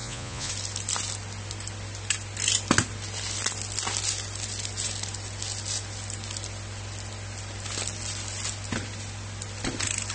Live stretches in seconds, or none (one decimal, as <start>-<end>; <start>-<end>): 0.5-10.1